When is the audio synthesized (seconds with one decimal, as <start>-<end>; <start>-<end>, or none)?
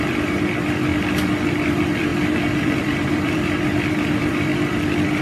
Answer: 0.0-0.9; 1.7-4.5